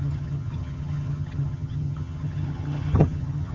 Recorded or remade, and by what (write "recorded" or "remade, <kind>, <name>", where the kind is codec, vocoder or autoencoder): remade, vocoder, HiFi-GAN